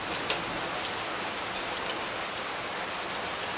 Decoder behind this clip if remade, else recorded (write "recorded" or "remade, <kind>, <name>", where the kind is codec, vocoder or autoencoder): recorded